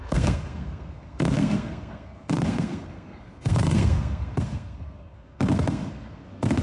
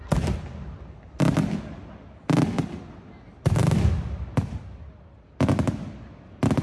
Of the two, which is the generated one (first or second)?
first